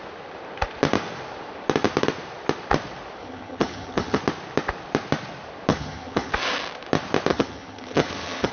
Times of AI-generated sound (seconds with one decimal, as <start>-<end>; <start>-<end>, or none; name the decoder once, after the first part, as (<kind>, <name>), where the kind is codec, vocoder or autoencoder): 3.2-4.2 (vocoder, HiFi-GAN); 5.7-6.3; 7.3-8.5